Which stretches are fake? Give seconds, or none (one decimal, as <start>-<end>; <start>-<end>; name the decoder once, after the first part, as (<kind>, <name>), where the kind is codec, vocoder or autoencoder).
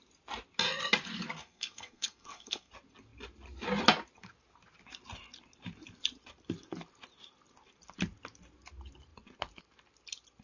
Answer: 1.4-2.7 (codec, SNAC)